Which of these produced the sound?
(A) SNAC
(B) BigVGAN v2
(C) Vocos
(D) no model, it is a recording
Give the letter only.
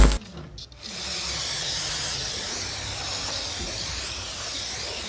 D